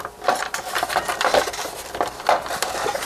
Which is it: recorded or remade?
recorded